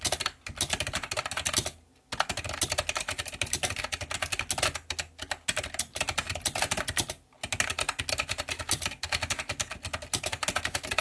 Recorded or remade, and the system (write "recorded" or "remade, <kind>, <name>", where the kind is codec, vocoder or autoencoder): recorded